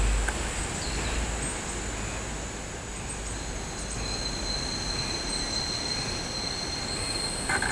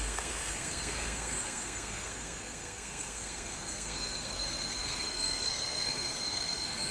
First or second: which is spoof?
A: second